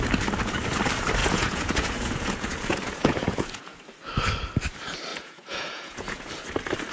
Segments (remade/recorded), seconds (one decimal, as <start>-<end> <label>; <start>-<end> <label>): 0.0-1.2 recorded; 1.2-3.8 remade; 3.8-5.1 recorded; 5.1-6.3 remade; 6.3-6.9 recorded